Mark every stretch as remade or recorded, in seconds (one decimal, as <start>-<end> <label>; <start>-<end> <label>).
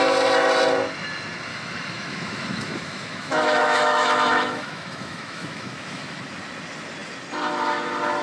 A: 0.0-1.5 recorded; 1.5-6.2 remade; 6.2-8.2 recorded